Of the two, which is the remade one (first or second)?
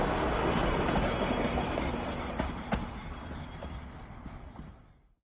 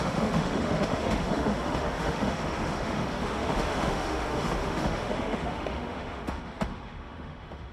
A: second